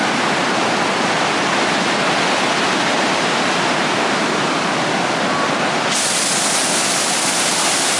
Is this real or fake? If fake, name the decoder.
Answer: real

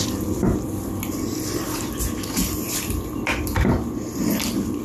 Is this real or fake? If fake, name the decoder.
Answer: fake, vocoder, BigVGAN v2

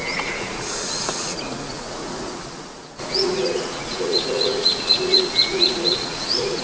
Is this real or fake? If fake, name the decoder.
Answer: fake, vocoder, Vocos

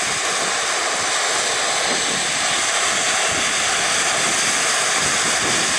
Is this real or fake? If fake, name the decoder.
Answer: real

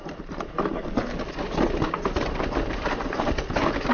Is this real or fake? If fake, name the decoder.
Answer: real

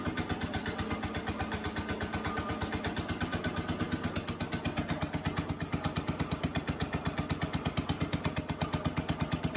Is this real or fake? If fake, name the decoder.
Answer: real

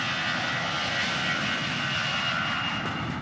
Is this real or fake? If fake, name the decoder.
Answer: real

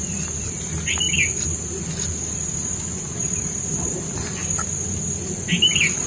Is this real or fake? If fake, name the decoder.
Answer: real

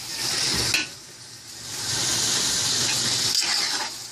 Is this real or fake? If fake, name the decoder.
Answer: real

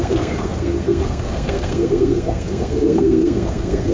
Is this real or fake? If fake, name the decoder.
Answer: fake, codec, SNAC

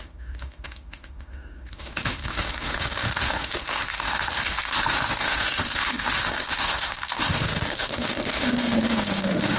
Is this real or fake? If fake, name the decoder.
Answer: fake, autoencoder, DAC-VAE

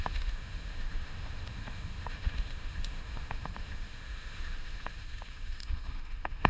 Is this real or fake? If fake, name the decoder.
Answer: fake, autoencoder, DAC-VAE